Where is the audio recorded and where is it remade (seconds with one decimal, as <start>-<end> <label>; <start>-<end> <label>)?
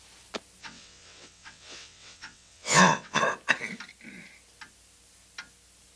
0.0-0.6 recorded; 0.6-3.2 remade; 3.2-6.0 recorded